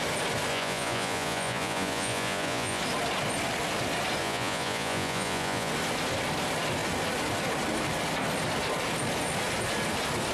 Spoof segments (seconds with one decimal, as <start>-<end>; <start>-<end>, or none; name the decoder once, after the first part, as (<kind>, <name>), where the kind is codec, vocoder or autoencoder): 0.5-2.8 (vocoder, Vocos); 4.2-5.7